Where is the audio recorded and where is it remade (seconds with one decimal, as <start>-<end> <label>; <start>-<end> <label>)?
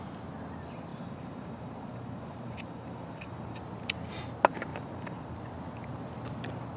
0.0-0.9 recorded; 0.9-3.6 remade; 3.6-4.7 recorded; 4.7-5.3 remade; 5.3-6.8 recorded